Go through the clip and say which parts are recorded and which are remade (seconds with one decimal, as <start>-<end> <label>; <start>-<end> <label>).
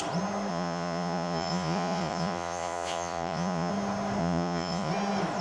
0.0-0.5 recorded; 0.5-3.7 remade; 3.7-4.2 recorded; 4.2-4.9 remade; 4.9-5.4 recorded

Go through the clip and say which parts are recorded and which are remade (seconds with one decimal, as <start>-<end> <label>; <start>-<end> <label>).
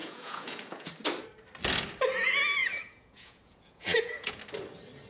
0.0-0.9 remade; 0.9-2.6 recorded; 2.6-4.4 remade; 4.4-5.1 recorded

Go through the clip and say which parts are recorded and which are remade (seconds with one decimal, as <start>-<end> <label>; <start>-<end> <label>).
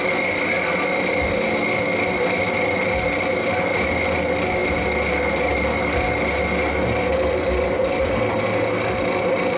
0.0-9.6 recorded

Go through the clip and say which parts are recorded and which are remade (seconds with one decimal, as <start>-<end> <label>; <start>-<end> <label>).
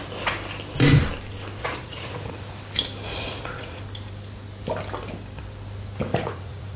0.0-1.6 recorded; 1.6-2.5 remade; 2.5-3.1 recorded; 3.1-3.8 remade; 3.8-6.1 recorded; 6.1-6.8 remade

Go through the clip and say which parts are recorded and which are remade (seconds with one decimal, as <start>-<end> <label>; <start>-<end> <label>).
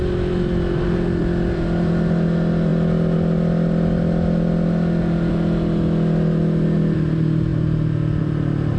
0.0-8.8 recorded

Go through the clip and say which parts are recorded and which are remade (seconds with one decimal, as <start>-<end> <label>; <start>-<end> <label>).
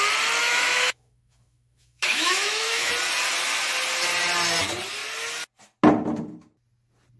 0.0-0.4 recorded; 0.4-2.9 remade; 2.9-7.2 recorded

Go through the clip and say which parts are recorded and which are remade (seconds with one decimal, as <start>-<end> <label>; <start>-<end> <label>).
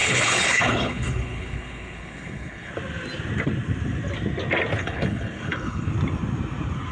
0.0-2.7 remade; 2.7-4.8 recorded; 4.8-5.9 remade; 5.9-6.9 recorded